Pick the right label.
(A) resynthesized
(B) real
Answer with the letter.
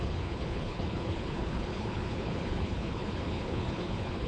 A